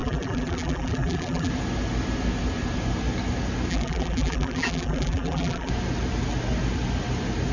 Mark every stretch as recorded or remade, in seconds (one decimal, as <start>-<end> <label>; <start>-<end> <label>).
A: 0.0-1.5 remade; 1.5-3.7 recorded; 3.7-5.7 remade; 5.7-7.5 recorded